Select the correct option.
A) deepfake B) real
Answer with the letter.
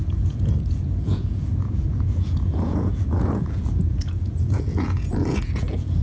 A